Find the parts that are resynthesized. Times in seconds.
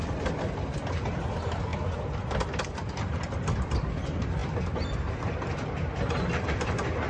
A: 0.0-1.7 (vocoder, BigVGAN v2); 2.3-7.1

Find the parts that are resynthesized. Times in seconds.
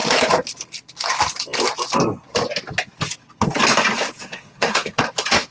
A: 4.2-5.0 (codec, SNAC)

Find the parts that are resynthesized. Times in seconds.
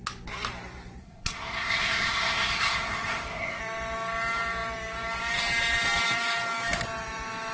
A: 1.0-3.6 (codec, SNAC)